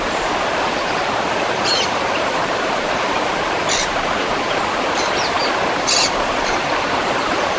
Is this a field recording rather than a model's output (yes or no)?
no